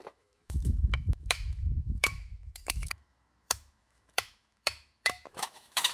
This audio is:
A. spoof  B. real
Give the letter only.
A